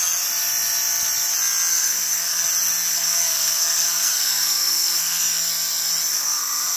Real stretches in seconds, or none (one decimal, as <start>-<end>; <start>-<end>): 0.0-1.7; 2.4-2.9; 5.2-6.1